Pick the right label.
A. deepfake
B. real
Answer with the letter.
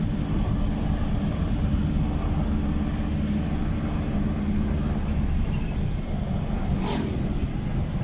B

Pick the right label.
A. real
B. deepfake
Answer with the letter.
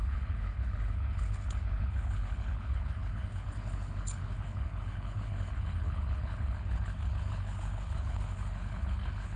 B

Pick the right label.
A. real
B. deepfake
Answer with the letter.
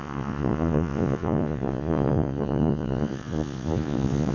B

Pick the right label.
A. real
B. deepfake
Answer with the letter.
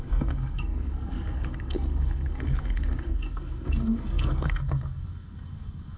B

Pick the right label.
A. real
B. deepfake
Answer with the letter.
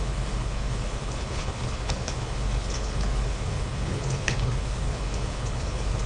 B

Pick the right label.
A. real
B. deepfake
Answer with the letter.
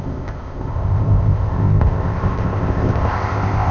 B